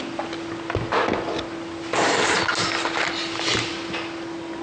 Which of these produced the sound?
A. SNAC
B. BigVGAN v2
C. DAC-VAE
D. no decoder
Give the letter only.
D